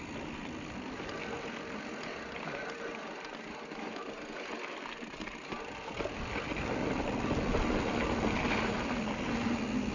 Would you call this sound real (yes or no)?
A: yes